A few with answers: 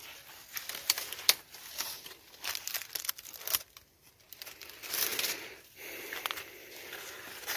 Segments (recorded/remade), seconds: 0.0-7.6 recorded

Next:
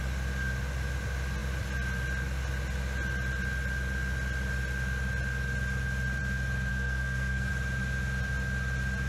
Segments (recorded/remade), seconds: 0.0-6.7 recorded; 6.7-7.5 remade; 7.5-9.1 recorded

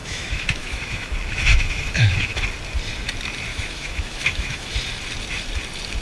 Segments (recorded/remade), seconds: 0.0-1.1 remade; 1.1-1.5 recorded; 1.5-2.4 remade; 2.4-3.5 recorded; 3.5-4.7 remade; 4.7-6.0 recorded

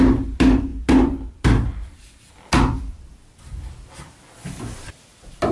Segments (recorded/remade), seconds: 0.0-5.5 recorded